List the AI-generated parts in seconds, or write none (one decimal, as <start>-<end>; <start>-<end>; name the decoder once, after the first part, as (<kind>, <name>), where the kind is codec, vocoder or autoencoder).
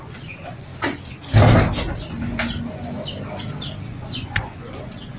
0.0-0.7 (vocoder, Vocos); 3.8-5.2